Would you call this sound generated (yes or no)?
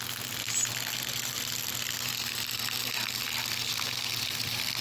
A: no